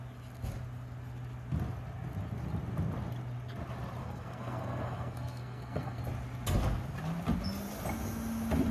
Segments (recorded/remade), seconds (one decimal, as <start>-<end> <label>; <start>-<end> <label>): 0.0-4.0 recorded; 4.0-6.0 remade; 6.0-8.7 recorded